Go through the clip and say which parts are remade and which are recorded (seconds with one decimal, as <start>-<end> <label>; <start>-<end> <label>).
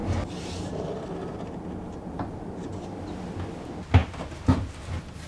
0.0-5.3 recorded